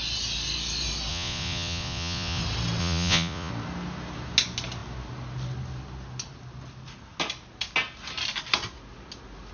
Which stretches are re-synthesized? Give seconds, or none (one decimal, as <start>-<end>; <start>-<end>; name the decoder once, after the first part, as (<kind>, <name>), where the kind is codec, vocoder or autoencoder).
1.1-2.4 (vocoder, Vocos); 2.8-3.5